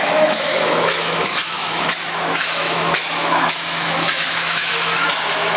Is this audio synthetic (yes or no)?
yes